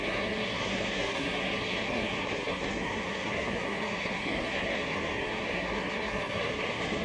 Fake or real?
fake